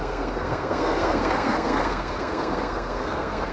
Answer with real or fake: fake